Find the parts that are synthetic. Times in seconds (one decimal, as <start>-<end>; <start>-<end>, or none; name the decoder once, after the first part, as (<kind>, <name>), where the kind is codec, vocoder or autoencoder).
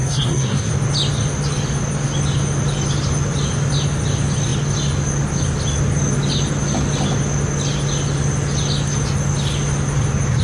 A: 0.0-0.7 (codec, SNAC)